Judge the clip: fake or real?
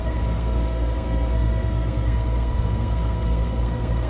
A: fake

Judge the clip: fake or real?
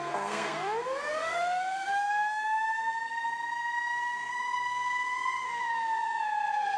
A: fake